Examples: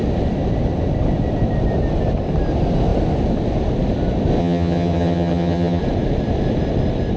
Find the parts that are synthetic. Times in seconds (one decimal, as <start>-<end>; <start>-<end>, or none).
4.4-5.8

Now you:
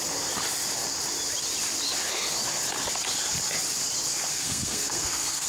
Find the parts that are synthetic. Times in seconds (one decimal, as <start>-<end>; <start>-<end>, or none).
4.3-5.5

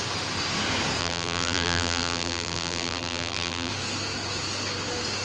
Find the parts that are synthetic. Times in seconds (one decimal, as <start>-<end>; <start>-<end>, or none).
1.0-3.7